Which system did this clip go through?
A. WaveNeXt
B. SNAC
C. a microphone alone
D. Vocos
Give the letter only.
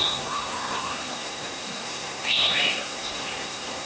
B